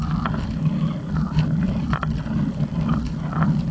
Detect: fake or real real